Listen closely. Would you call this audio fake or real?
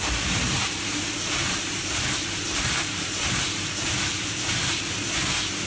fake